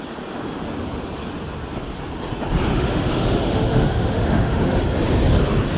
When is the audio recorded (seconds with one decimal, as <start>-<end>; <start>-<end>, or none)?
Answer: 0.0-2.7; 4.8-5.8